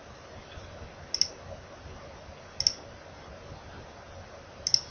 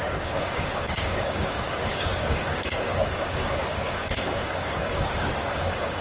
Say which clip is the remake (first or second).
second